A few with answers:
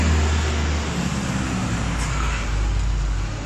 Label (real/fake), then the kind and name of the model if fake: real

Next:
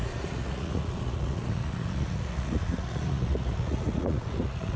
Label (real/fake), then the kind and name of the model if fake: fake, vocoder, Vocos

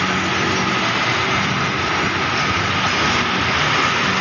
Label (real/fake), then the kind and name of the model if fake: real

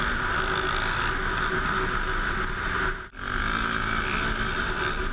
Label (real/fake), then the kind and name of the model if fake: real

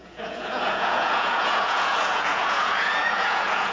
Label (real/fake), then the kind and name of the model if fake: fake, vocoder, Vocos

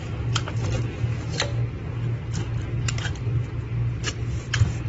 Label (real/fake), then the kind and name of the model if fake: real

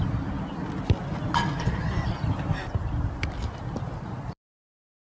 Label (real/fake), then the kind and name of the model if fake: fake, vocoder, BigVGAN v2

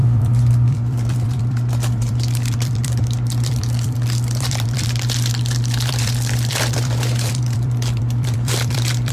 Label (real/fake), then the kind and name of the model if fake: fake, vocoder, BigVGAN v2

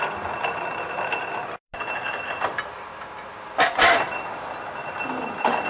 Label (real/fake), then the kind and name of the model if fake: real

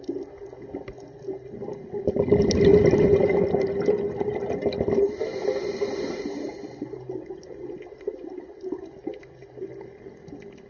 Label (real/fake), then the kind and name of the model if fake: real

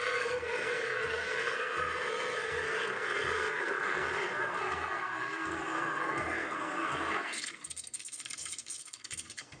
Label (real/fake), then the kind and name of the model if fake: fake, codec, SNAC